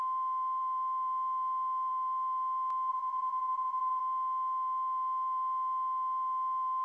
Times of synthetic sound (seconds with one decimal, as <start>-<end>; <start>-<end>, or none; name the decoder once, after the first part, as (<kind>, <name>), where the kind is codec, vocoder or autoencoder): 2.9-4.0 (vocoder, WaveNeXt)